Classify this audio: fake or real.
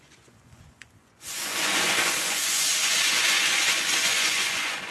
fake